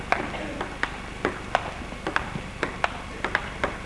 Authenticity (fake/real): real